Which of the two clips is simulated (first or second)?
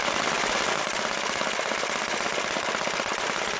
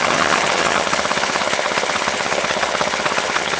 second